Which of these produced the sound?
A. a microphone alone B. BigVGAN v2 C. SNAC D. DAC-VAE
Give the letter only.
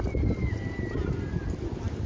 A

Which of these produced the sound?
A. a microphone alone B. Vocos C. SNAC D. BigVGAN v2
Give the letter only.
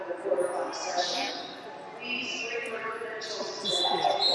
A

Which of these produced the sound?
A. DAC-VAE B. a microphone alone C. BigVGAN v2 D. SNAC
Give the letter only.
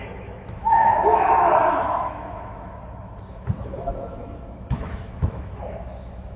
A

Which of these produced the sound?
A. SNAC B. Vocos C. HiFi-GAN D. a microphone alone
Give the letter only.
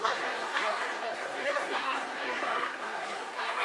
A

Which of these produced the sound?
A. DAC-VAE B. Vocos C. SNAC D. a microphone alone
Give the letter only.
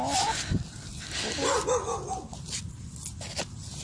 D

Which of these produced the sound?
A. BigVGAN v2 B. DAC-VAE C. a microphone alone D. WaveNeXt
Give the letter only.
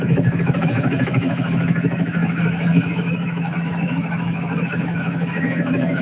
B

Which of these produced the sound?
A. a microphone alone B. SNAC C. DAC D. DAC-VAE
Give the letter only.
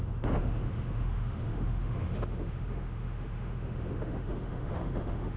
D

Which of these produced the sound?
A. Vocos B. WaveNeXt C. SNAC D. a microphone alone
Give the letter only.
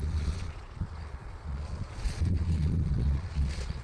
A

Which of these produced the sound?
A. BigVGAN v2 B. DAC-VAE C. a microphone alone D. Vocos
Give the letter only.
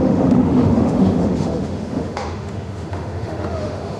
B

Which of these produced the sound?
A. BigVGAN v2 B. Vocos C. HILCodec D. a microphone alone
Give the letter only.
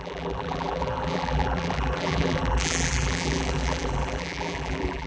A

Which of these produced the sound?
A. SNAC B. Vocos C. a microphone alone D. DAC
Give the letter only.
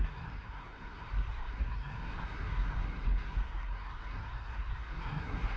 A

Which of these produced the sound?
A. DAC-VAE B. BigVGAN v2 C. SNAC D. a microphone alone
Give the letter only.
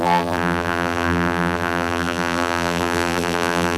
B